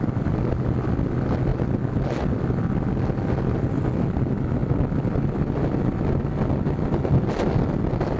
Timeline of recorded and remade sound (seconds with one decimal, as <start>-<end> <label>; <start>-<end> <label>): 0.0-8.2 recorded